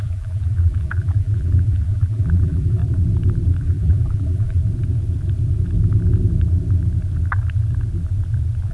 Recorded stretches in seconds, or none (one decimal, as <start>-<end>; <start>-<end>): 2.8-3.6; 4.6-8.7